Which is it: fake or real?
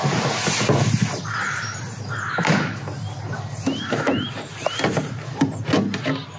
real